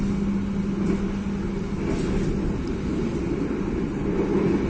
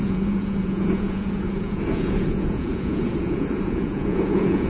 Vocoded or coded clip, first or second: second